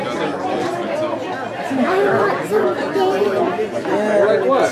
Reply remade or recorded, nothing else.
recorded